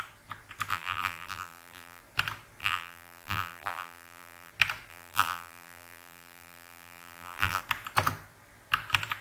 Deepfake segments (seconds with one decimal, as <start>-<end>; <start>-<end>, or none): 0.7-2.0; 2.6-4.5; 4.9-7.6

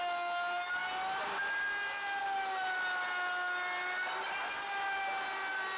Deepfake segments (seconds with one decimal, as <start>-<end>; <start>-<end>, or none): none

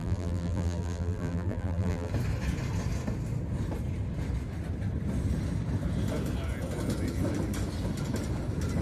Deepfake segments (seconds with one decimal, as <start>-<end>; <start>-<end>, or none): 0.0-2.1

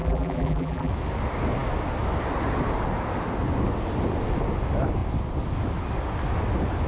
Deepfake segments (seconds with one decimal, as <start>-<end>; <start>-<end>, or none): 0.0-0.9